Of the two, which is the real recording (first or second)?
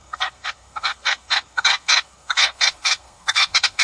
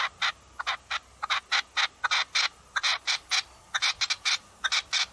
second